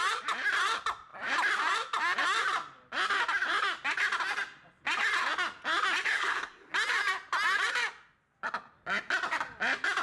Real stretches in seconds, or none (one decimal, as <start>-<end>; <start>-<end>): 0.0-6.1; 6.7-10.0